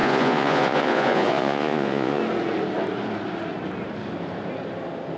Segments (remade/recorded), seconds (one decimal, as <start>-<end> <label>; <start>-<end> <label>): 0.0-2.2 remade; 2.2-5.2 recorded